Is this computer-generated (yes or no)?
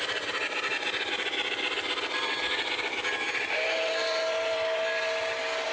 no